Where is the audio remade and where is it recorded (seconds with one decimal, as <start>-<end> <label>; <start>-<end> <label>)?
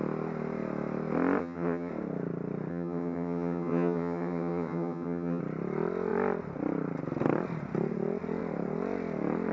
0.0-1.4 recorded; 1.4-1.9 remade; 1.9-2.7 recorded; 2.7-5.4 remade; 5.4-9.5 recorded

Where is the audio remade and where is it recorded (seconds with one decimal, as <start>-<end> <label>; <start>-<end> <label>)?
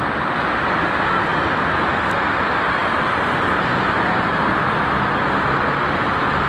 0.0-6.5 recorded